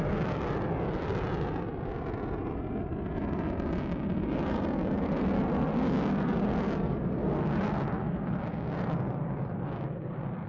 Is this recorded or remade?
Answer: recorded